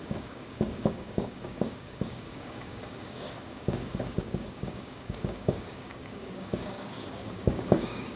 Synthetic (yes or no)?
yes